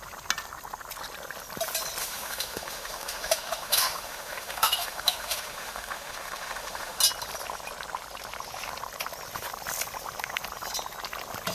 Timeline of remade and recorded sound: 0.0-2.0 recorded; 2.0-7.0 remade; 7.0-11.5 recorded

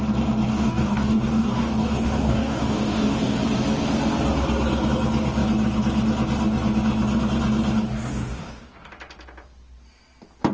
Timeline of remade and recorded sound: 0.0-0.5 recorded; 0.5-3.4 remade; 3.4-8.1 recorded; 8.1-8.9 remade; 8.9-10.5 recorded

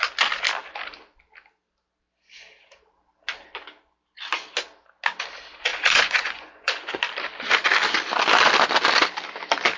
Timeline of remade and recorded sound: 0.0-5.7 recorded; 5.7-7.0 remade; 7.0-9.8 recorded